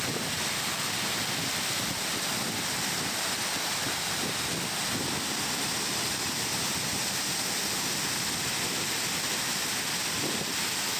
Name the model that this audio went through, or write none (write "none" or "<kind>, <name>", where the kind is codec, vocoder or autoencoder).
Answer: none